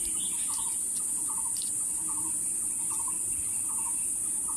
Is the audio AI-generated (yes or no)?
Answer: no